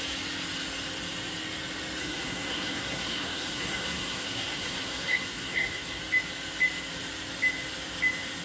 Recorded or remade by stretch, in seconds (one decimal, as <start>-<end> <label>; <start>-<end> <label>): 0.0-2.0 recorded; 2.0-6.0 remade; 6.0-8.4 recorded